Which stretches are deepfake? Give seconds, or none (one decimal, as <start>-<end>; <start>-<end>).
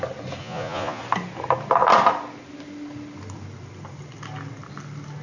0.4-1.0